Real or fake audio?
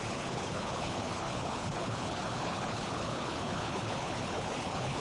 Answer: fake